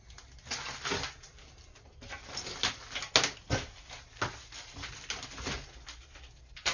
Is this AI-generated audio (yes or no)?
no